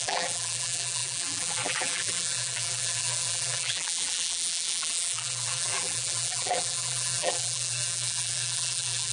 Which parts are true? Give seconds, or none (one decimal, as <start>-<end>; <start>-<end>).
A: none